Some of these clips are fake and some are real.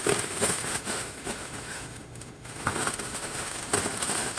fake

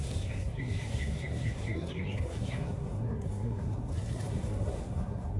fake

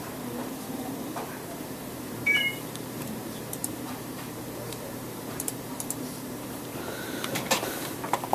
fake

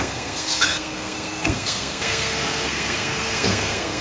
fake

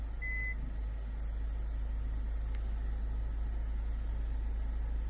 real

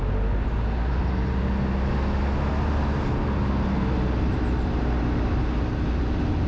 real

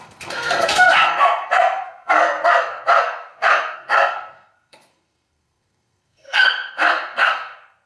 fake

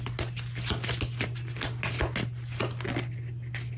real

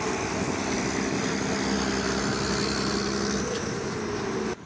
real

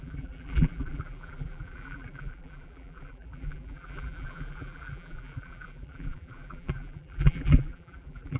fake